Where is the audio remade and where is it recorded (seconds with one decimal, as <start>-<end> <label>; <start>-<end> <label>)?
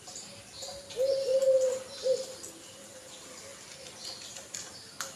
0.0-5.2 recorded